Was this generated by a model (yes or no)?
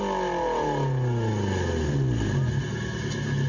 no